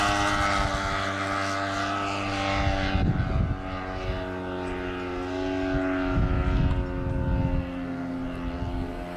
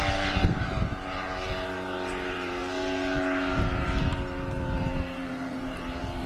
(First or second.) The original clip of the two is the first